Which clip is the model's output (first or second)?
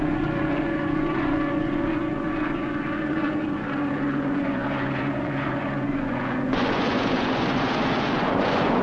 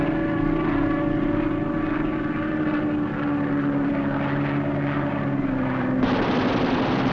first